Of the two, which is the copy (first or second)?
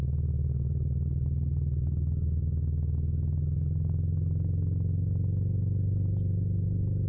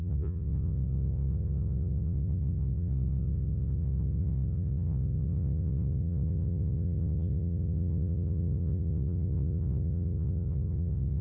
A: second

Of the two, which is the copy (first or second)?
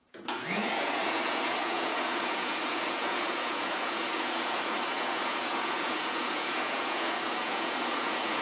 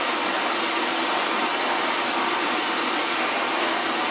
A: first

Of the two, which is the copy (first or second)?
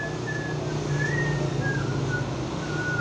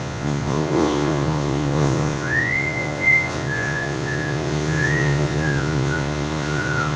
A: second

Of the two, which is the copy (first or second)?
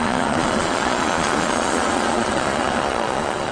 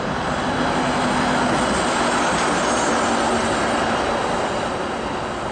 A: first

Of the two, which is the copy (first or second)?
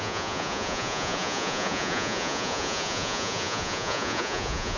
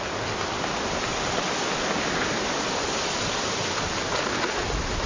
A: first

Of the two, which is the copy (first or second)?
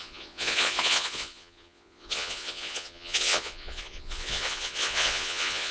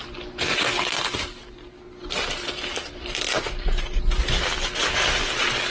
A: first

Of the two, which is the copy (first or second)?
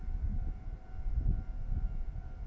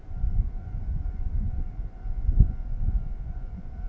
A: second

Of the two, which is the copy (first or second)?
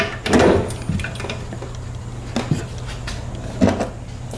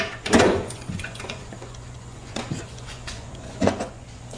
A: second